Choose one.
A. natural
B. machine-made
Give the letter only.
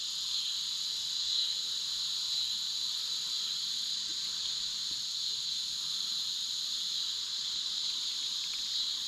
A